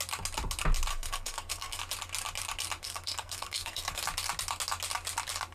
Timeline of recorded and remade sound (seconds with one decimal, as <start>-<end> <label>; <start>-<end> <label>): 0.0-0.9 recorded; 0.9-1.8 remade; 1.8-2.8 recorded; 2.8-4.0 remade; 4.0-5.5 recorded